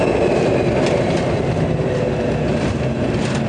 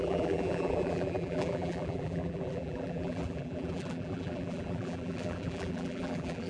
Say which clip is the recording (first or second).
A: first